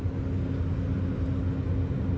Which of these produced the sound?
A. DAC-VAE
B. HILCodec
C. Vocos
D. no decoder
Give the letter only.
D